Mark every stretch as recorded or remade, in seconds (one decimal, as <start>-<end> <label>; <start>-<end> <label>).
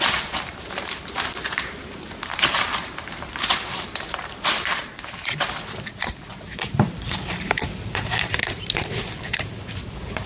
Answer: 0.0-10.3 remade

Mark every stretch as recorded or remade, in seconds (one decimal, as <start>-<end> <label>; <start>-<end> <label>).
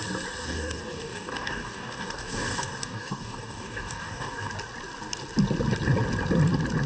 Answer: 0.0-0.4 recorded; 0.4-4.5 remade; 4.5-6.9 recorded